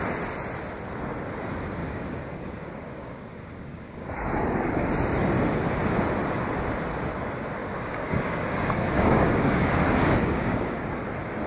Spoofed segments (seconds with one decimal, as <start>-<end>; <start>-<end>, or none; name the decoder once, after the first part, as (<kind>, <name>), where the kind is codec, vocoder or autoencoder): 1.8-4.9 (codec, DAC); 7.6-10.8